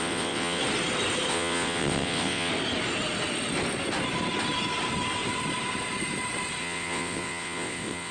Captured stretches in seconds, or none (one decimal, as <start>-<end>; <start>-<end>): 0.6-1.3; 2.5-6.6